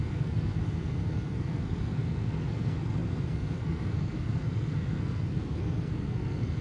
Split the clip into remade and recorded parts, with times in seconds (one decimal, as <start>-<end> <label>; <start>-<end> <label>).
0.0-6.6 remade